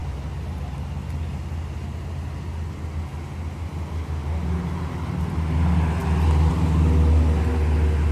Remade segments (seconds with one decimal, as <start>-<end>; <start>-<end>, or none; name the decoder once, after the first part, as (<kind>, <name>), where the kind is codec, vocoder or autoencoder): none